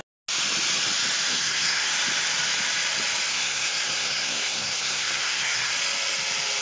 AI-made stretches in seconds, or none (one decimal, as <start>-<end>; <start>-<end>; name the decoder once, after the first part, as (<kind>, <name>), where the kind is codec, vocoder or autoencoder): 1.3-1.9 (codec, SNAC); 3.3-5.7